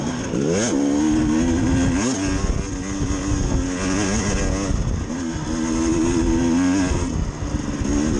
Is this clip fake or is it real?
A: real